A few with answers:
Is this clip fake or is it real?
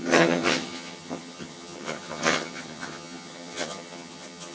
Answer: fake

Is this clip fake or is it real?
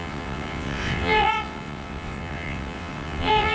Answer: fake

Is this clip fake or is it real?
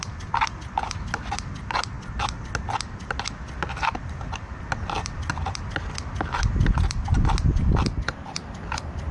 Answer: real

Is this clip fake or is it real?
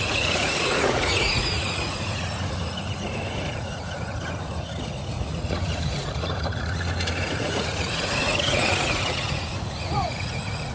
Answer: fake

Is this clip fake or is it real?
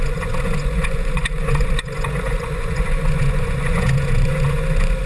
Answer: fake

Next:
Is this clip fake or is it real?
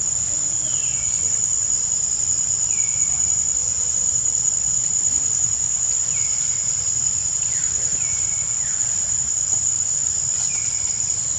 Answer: fake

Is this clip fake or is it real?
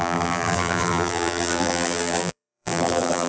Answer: fake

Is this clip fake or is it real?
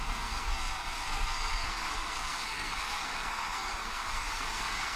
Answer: fake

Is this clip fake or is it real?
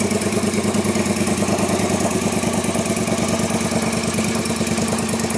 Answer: real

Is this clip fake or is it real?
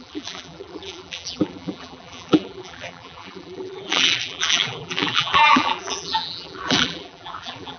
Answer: fake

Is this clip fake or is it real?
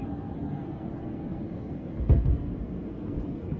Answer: fake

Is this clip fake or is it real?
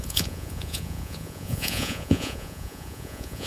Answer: fake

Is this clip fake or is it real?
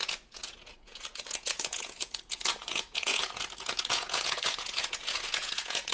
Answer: fake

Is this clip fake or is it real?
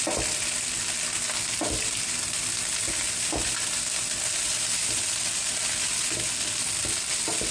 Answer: real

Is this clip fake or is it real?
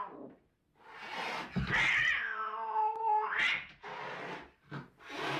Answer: real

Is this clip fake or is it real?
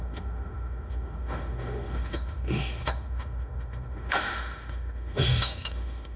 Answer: fake